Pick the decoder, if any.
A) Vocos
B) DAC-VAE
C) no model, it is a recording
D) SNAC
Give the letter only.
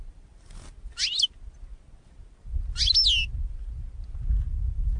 C